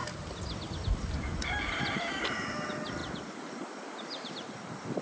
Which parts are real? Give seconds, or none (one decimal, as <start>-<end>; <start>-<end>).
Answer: 0.0-3.0